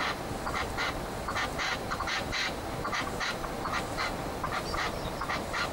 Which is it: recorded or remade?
recorded